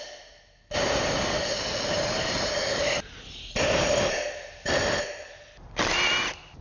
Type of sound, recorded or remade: recorded